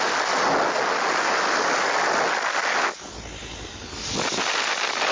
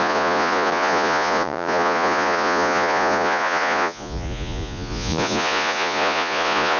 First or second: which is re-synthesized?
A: second